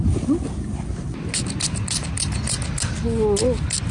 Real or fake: real